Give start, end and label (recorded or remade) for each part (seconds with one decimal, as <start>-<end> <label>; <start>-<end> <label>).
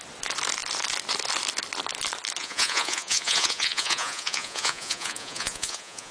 0.0-2.4 recorded; 2.4-6.1 remade